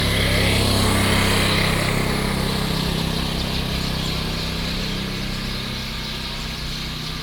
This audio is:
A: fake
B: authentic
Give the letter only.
B